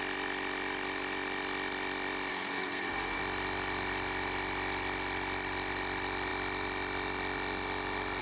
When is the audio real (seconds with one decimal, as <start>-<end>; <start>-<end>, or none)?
0.0-2.3; 3.2-8.2